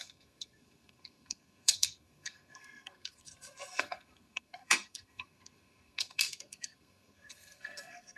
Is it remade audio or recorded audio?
remade